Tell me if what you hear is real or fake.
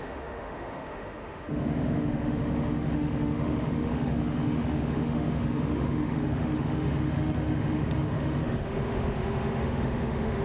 fake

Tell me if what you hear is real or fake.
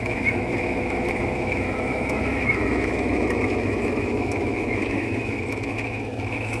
fake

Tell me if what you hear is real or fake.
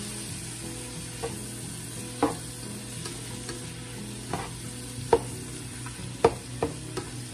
real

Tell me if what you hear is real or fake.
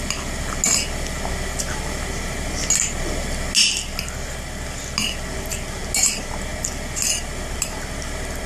real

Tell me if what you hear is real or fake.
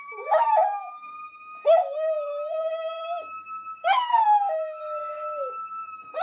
fake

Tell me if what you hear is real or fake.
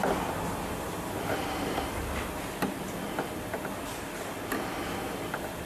real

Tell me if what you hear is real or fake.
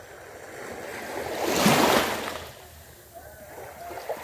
real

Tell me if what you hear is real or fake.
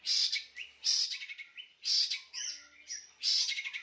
real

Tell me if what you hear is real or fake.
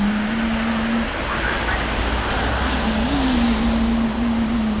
real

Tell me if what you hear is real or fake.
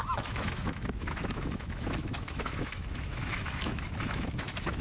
fake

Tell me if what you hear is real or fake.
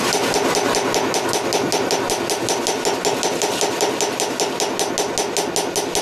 real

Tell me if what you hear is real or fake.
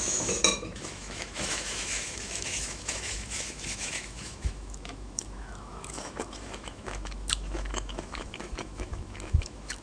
fake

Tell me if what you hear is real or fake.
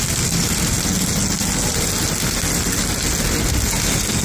real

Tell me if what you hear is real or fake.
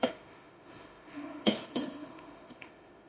fake